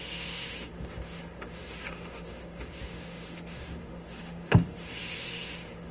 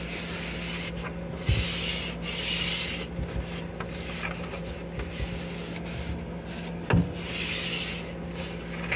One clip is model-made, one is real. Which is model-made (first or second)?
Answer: first